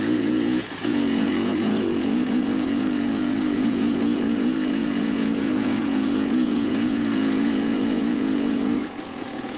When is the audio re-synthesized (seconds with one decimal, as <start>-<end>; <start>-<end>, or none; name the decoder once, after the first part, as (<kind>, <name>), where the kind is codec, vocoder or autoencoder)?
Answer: 0.0-9.6 (vocoder, Vocos)